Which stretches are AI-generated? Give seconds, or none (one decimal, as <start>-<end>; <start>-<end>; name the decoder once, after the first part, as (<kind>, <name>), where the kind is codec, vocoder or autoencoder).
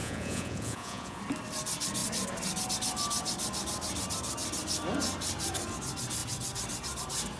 0.0-1.2 (vocoder, Vocos)